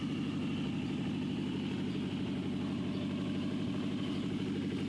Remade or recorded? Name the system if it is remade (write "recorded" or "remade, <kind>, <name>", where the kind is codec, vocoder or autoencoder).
recorded